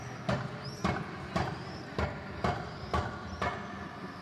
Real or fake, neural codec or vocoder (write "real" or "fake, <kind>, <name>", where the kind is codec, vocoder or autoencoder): real